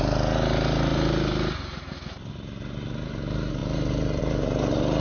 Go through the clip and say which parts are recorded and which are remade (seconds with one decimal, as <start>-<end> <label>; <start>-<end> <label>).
0.0-0.9 recorded; 0.9-2.2 remade; 2.2-5.0 recorded